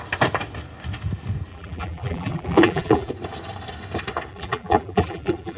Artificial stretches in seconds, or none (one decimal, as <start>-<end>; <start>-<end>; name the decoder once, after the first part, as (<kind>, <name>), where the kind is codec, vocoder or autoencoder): 1.5-3.1 (vocoder, BigVGAN v2); 4.3-5.6